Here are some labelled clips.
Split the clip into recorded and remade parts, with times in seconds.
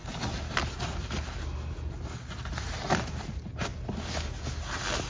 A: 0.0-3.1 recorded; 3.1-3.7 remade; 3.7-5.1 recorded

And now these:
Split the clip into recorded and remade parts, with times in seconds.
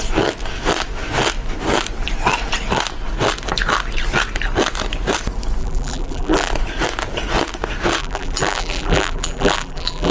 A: 0.0-5.6 recorded; 5.6-6.5 remade; 6.5-8.0 recorded; 8.0-10.1 remade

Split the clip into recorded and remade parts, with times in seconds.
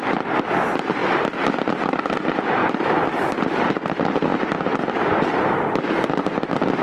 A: 0.0-2.6 recorded; 2.6-3.7 remade; 3.7-6.8 recorded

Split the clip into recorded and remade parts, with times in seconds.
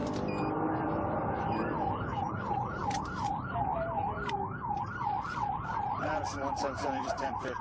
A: 0.0-2.2 remade; 2.2-2.8 recorded; 2.8-7.6 remade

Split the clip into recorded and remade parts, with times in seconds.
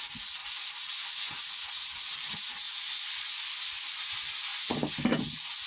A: 0.0-2.1 recorded; 2.1-3.4 remade; 3.4-5.7 recorded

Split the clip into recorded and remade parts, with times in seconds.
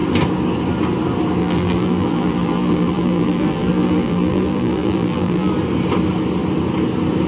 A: 0.0-1.4 recorded; 1.4-5.5 remade; 5.5-7.3 recorded